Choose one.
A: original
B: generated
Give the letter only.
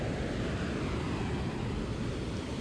A